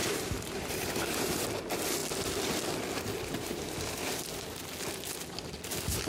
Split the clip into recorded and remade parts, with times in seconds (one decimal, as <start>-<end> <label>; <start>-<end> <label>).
0.0-1.4 remade; 1.4-6.1 recorded